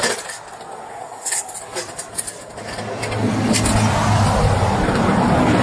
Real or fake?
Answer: real